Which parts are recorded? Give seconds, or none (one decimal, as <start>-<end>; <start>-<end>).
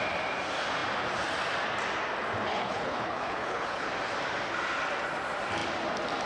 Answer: 0.0-2.5; 3.9-6.3